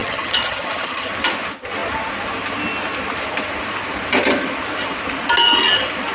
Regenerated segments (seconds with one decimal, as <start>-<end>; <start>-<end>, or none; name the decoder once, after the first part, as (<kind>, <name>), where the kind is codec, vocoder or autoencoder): 0.0-1.1 (vocoder, HiFi-GAN)